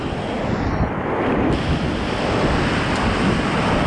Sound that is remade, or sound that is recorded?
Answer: recorded